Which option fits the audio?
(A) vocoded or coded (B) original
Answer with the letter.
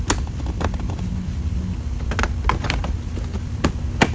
B